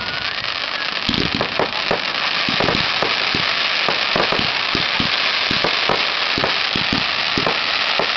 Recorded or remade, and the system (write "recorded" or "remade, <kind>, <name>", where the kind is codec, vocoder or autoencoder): recorded